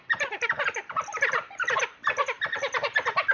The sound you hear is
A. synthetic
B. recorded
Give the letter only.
B